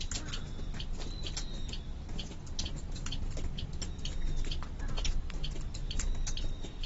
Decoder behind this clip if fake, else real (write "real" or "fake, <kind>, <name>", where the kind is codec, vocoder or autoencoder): real